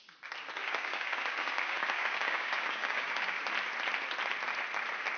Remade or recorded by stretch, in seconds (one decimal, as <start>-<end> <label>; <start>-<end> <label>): 0.0-0.6 recorded; 0.6-3.4 remade; 3.4-5.2 recorded